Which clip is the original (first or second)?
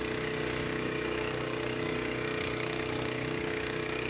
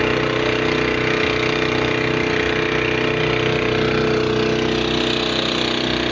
second